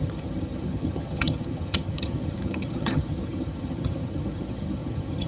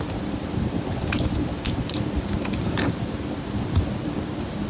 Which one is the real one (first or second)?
second